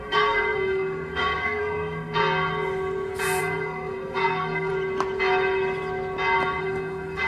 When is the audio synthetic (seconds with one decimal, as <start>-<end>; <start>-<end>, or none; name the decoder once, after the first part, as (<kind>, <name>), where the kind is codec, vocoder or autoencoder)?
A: 0.0-2.2 (codec, SNAC); 3.4-4.7; 6.6-7.3